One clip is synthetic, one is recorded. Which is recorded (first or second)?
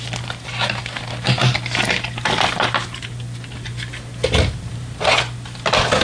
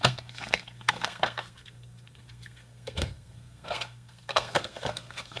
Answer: first